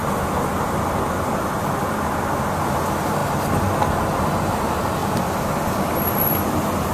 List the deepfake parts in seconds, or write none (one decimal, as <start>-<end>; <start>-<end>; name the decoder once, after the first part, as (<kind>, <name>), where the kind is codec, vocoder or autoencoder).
none